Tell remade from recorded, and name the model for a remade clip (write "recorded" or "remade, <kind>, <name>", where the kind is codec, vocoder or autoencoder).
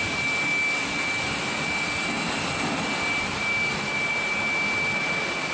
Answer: recorded